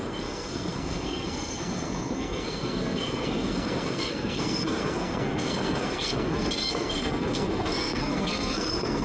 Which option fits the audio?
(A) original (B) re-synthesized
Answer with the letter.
B